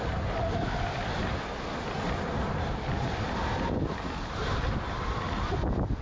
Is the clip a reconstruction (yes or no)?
no